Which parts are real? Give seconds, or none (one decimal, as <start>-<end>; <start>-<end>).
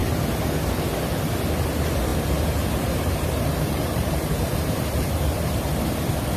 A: 0.0-2.1; 5.8-6.4